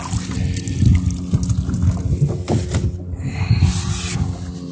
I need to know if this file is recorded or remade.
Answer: recorded